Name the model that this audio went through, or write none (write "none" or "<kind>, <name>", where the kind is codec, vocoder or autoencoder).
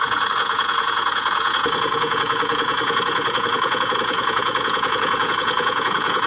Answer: vocoder, Vocos